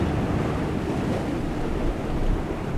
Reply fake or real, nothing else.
real